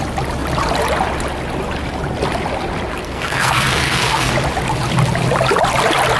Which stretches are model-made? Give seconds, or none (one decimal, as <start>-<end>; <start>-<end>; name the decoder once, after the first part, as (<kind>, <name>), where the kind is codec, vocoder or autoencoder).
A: 3.0-4.3 (codec, SNAC)